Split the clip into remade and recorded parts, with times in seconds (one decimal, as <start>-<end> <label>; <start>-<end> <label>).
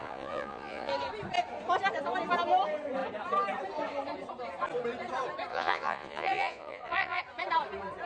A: 0.0-0.9 remade; 0.9-5.5 recorded; 5.5-7.2 remade; 7.2-8.1 recorded